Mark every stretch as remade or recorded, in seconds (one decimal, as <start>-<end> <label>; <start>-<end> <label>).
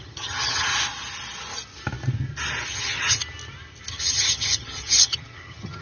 0.0-0.7 remade; 0.7-2.7 recorded; 2.7-3.2 remade; 3.2-3.9 recorded; 3.9-5.8 remade